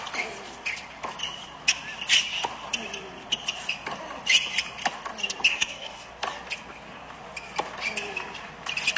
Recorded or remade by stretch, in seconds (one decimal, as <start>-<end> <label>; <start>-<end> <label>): 0.0-5.5 recorded; 5.5-6.1 remade; 6.1-9.0 recorded